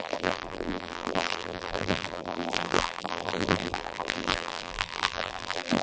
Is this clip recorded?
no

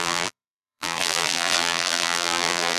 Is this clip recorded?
no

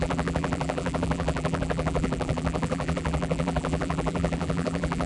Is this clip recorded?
no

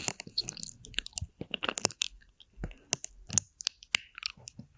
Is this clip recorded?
yes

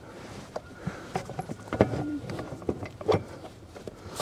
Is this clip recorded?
no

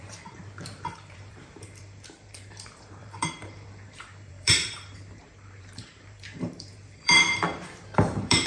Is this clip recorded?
no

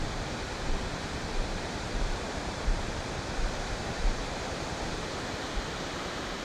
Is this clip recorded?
no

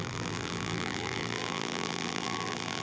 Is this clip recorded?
no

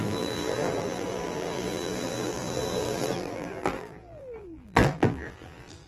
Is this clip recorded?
no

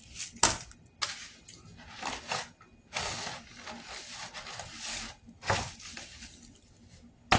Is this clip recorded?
yes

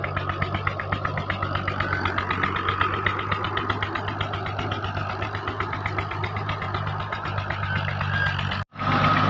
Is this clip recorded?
yes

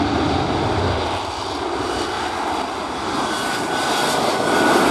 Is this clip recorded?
yes